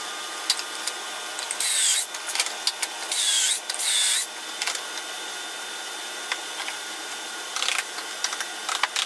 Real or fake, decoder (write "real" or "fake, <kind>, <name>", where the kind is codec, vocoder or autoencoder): real